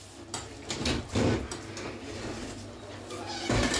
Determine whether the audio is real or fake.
real